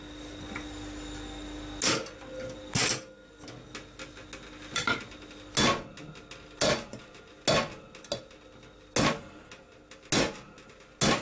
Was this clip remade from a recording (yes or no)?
no